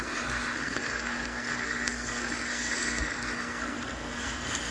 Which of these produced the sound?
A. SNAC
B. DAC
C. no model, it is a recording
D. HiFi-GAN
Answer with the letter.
A